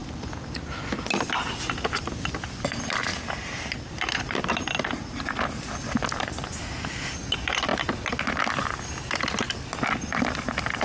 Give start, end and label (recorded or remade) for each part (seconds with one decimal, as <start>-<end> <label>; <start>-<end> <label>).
0.0-10.8 recorded